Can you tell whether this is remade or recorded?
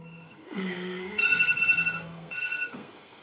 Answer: remade